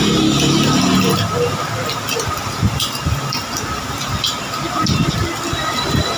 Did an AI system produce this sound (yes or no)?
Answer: no